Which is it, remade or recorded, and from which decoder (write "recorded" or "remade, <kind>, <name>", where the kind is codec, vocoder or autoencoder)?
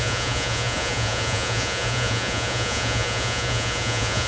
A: remade, vocoder, Vocos